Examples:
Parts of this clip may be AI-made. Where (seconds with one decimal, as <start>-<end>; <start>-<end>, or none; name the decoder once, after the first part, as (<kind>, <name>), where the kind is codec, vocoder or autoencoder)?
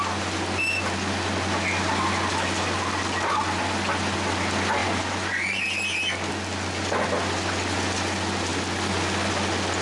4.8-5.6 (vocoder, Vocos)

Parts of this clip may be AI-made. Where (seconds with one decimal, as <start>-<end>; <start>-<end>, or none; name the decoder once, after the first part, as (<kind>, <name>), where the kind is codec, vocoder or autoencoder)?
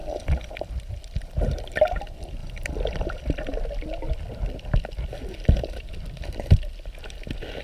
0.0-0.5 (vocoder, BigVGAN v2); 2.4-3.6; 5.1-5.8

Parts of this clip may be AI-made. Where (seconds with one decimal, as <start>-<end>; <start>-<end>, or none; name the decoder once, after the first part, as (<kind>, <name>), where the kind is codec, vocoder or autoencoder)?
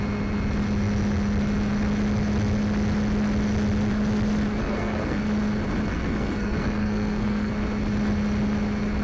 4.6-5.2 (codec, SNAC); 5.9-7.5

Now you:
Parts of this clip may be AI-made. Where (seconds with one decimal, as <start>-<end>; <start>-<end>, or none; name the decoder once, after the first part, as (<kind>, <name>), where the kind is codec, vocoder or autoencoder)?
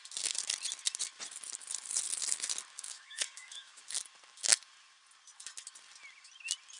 2.7-3.8 (codec, DAC)